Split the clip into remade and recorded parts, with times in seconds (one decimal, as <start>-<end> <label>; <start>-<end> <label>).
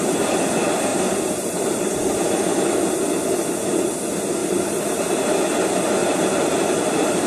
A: 0.0-0.9 recorded; 0.9-2.2 remade; 2.2-4.4 recorded; 4.4-5.4 remade; 5.4-6.0 recorded; 6.0-7.3 remade